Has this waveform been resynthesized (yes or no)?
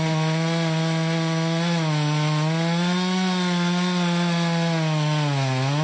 no